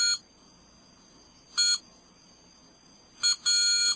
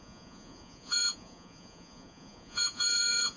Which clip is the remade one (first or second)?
second